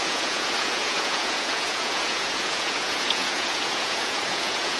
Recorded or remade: remade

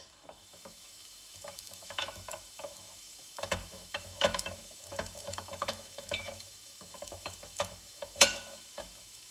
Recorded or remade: remade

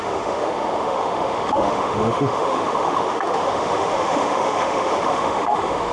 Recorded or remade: remade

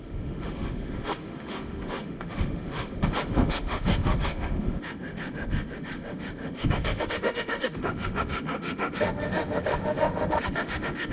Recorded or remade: remade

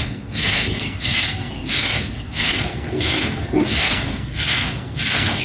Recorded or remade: remade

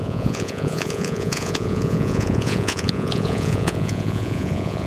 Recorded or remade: remade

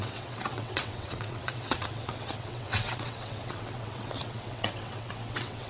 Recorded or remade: remade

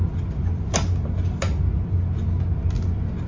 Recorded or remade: recorded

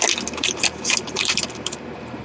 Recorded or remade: recorded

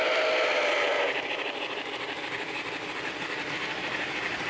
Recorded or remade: remade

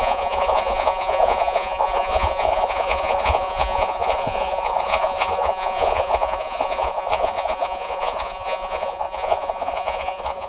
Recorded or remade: remade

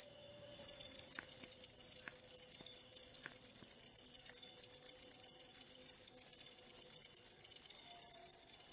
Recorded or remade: recorded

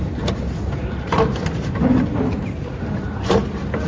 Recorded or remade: recorded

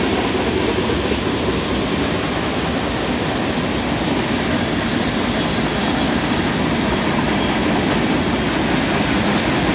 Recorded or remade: recorded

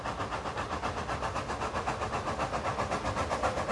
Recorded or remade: recorded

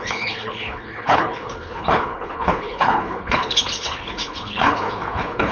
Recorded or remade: remade